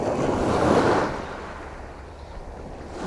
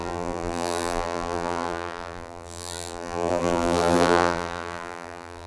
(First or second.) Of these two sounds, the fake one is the second